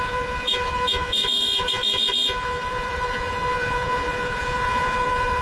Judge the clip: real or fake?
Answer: fake